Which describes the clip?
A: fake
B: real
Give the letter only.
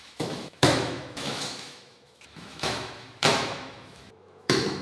A